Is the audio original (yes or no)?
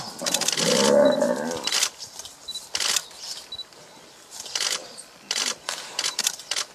no